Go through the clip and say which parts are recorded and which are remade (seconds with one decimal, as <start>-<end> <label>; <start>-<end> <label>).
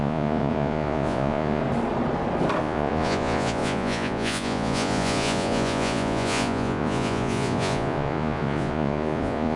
0.0-1.6 remade; 1.6-2.6 recorded; 2.6-9.6 remade